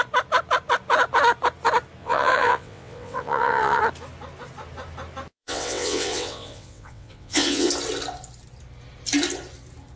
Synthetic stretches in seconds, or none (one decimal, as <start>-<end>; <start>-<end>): 2.0-3.8; 5.3-7.7

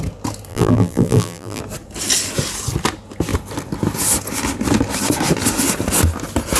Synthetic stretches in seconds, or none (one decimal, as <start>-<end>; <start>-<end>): 0.5-1.6